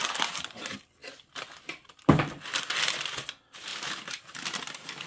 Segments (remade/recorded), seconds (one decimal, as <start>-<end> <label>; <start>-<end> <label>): 0.0-5.1 recorded